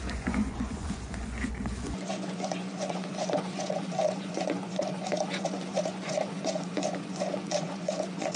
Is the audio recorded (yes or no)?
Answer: no